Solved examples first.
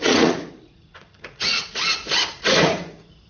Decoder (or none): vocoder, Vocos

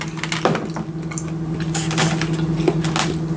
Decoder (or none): none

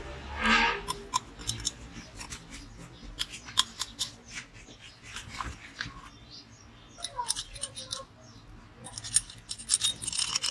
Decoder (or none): none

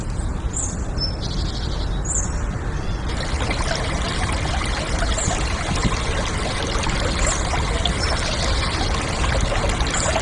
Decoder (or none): none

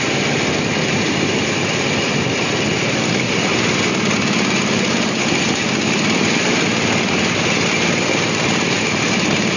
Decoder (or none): none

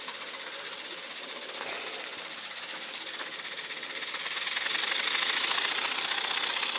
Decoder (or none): none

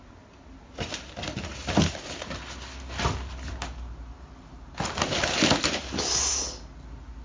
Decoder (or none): none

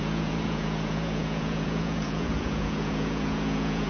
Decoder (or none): vocoder, Vocos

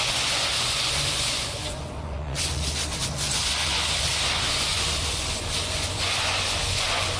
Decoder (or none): vocoder, Vocos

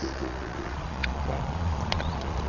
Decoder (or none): vocoder, Vocos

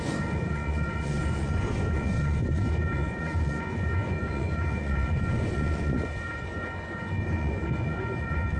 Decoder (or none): vocoder, Vocos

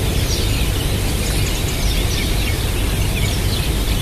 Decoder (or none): none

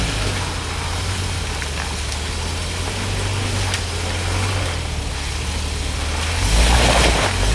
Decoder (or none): none